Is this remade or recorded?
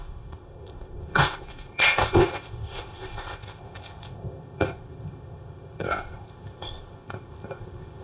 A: remade